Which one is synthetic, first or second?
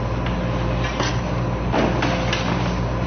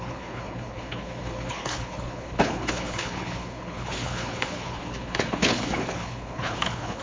second